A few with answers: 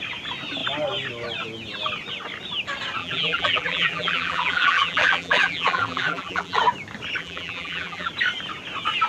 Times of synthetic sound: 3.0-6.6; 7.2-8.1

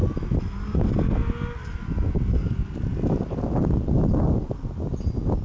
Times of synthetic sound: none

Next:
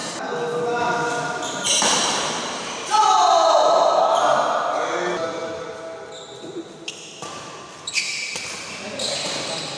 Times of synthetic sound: none

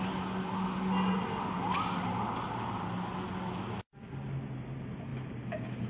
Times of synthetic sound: 5.1-5.9